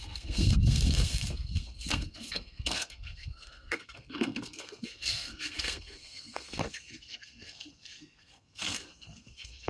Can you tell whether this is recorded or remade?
remade